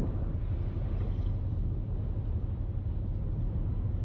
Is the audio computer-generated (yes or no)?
no